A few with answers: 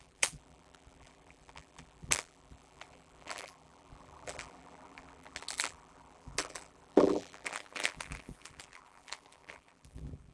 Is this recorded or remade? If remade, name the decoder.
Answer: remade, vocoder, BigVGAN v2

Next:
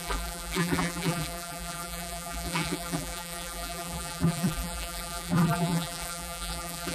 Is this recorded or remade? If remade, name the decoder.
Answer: remade, vocoder, BigVGAN v2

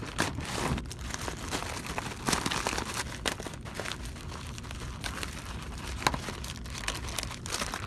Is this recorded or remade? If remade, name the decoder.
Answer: recorded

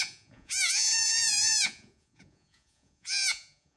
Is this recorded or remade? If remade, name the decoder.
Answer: remade, vocoder, Vocos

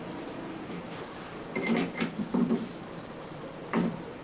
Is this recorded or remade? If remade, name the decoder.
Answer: remade, vocoder, BigVGAN v2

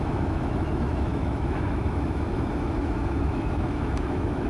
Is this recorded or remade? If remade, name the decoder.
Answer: remade, autoencoder, DAC-VAE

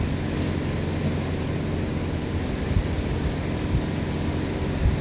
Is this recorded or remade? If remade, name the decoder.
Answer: recorded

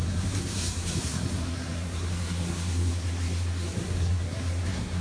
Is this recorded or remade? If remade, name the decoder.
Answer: remade, codec, SNAC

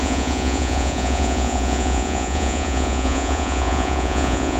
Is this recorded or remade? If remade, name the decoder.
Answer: remade, vocoder, Vocos